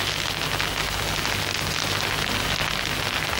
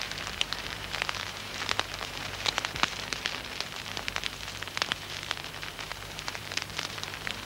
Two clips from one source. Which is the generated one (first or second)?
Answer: second